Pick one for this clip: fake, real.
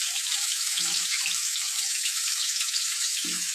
fake